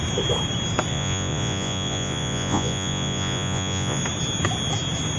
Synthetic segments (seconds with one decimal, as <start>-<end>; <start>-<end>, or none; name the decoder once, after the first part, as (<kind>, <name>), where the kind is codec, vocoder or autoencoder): 0.9-4.0 (vocoder, Vocos)